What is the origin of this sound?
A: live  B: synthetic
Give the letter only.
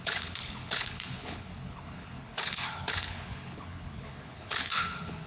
B